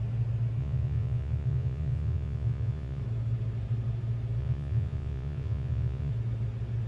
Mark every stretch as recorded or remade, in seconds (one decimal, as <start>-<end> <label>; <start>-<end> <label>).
0.0-0.6 recorded; 0.6-3.0 remade; 3.0-4.4 recorded; 4.4-6.1 remade; 6.1-6.9 recorded